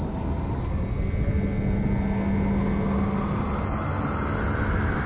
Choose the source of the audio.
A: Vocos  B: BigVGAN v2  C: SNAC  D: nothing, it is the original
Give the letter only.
D